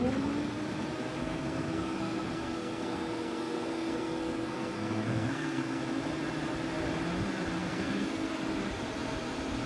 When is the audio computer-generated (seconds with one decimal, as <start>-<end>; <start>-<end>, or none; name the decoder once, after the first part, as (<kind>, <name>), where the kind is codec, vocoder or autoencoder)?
1.2-5.8 (codec, SNAC); 7.6-8.3